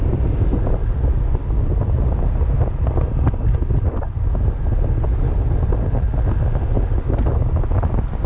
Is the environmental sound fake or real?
real